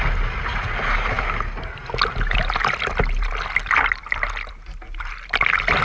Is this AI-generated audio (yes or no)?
no